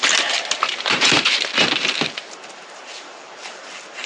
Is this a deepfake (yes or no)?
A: yes